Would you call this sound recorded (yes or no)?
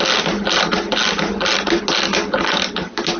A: yes